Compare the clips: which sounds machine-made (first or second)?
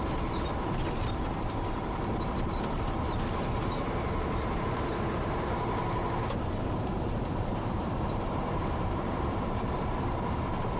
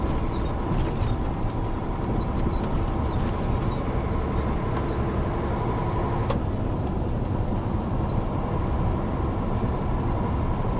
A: first